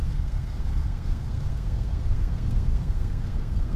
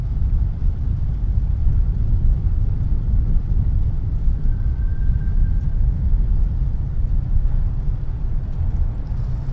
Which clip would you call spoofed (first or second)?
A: first